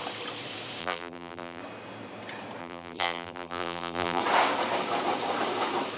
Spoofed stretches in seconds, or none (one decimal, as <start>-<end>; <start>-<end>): 0.8-1.6; 2.6-4.2